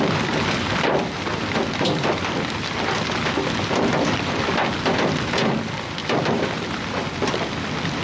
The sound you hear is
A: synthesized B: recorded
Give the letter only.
B